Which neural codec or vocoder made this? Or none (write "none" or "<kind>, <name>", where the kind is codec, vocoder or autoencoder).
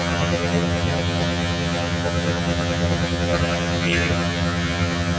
vocoder, HiFi-GAN